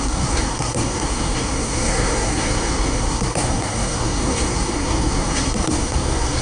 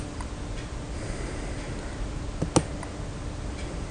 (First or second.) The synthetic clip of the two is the first